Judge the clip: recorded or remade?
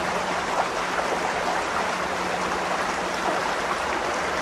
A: recorded